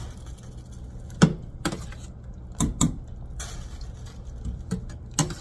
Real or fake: real